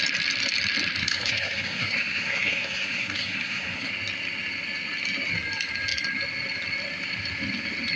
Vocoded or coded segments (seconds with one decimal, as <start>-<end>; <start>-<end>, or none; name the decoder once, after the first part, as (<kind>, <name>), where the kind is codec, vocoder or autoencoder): 1.0-3.9 (codec, SNAC)